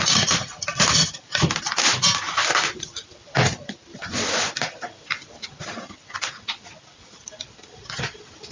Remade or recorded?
recorded